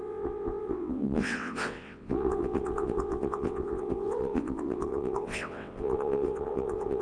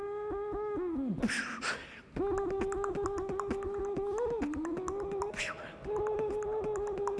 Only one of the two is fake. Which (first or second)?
first